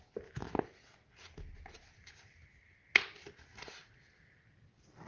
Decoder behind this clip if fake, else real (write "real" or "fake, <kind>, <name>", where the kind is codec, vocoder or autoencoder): real